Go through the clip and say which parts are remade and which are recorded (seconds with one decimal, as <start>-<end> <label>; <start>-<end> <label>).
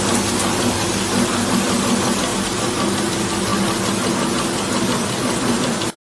0.0-6.1 recorded